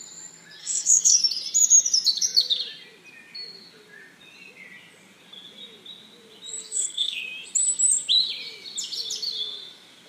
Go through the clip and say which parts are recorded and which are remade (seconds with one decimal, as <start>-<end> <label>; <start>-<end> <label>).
0.0-0.6 recorded; 0.6-1.2 remade; 1.2-6.6 recorded; 6.6-7.2 remade; 7.2-10.1 recorded

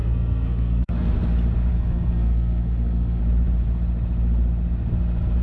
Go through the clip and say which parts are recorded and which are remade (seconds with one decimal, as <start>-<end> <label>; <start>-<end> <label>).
0.0-1.1 remade; 1.1-1.7 recorded; 1.7-3.2 remade; 3.2-5.4 recorded

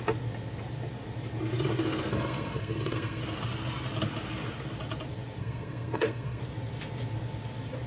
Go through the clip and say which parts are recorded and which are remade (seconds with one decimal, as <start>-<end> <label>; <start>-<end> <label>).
0.0-2.1 recorded; 2.1-3.2 remade; 3.2-5.4 recorded; 5.4-6.4 remade; 6.4-7.9 recorded

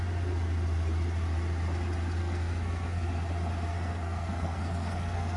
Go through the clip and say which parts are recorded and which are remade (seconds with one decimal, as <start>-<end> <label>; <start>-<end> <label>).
0.0-2.2 recorded; 2.2-3.1 remade; 3.1-3.7 recorded; 3.7-5.4 remade

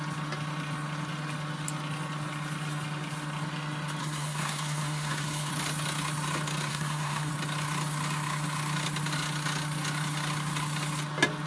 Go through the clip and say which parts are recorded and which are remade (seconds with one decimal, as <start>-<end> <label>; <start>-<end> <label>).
0.0-4.0 recorded; 4.0-5.5 remade; 5.5-6.7 recorded; 6.7-7.3 remade; 7.3-11.5 recorded

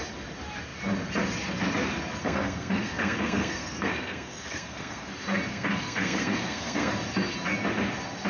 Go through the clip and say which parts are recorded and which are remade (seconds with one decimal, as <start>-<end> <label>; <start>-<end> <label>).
0.0-2.2 recorded; 2.2-5.1 remade; 5.1-5.5 recorded; 5.5-6.9 remade; 6.9-8.3 recorded